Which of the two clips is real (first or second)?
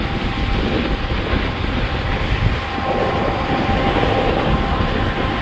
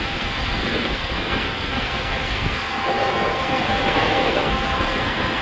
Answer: first